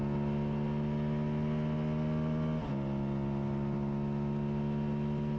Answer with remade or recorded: recorded